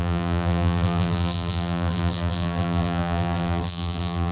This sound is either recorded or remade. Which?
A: remade